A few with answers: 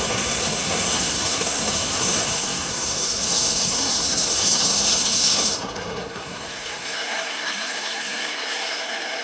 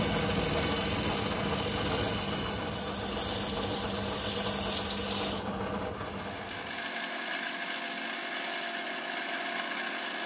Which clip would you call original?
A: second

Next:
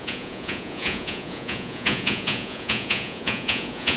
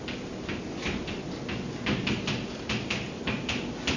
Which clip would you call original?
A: second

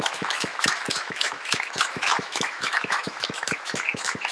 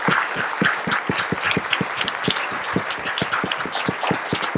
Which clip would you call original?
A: second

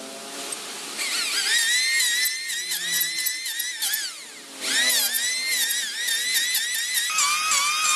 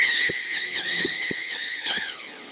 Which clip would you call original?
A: first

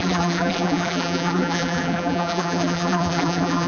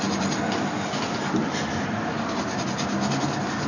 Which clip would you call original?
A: second